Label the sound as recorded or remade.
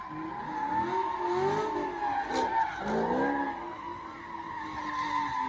recorded